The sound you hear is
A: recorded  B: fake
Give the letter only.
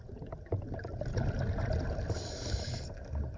A